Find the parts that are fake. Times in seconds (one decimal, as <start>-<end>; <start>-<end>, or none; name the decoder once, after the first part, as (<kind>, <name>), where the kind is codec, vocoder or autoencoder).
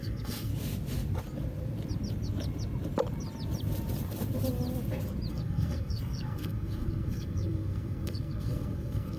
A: 0.0-0.5 (codec, SNAC); 5.3-9.2